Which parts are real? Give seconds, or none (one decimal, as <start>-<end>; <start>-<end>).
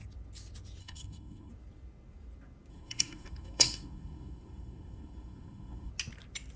0.0-0.8; 1.5-2.7; 5.9-6.6